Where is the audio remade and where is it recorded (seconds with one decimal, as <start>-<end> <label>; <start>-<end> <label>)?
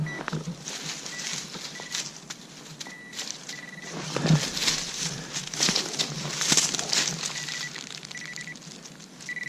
0.0-2.7 recorded; 2.7-5.4 remade; 5.4-9.5 recorded